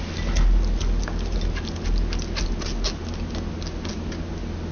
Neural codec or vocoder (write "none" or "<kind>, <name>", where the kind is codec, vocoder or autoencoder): none